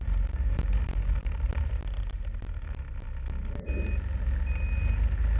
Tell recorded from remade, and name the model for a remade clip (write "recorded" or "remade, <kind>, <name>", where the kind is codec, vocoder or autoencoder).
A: recorded